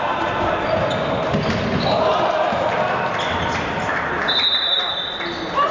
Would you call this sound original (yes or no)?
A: yes